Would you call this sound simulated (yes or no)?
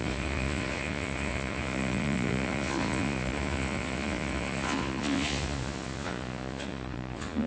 yes